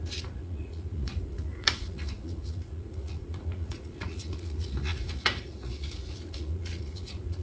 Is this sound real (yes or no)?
no